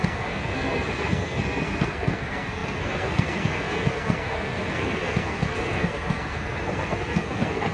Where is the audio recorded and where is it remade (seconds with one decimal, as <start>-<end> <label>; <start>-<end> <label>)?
0.0-7.7 remade